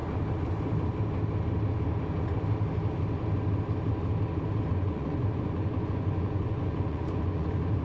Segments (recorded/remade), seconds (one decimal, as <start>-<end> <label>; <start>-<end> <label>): 0.0-4.7 recorded; 4.7-7.8 remade